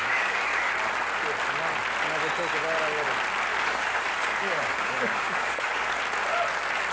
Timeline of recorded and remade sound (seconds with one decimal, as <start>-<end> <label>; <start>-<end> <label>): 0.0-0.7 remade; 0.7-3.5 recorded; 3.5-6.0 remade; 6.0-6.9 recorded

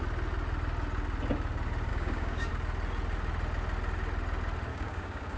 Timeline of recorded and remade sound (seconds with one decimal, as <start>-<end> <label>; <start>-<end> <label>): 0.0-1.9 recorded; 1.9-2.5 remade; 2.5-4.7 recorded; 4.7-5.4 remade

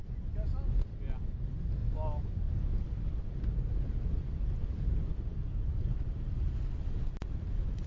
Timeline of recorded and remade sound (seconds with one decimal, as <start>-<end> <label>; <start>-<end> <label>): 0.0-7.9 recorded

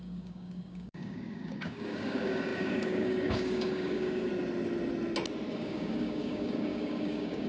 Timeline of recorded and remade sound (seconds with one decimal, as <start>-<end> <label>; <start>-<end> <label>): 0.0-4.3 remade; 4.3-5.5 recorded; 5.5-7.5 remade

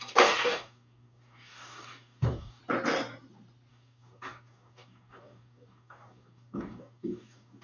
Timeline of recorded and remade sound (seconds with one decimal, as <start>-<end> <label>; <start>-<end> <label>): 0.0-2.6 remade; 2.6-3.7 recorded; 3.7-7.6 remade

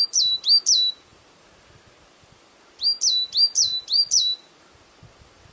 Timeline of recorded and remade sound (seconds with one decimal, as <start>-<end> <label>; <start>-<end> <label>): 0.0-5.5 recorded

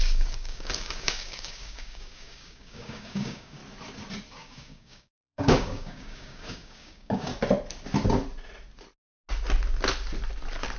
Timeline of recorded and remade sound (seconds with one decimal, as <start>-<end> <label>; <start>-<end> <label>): 0.0-3.6 remade; 3.6-4.3 recorded; 4.3-7.3 remade; 7.3-10.8 recorded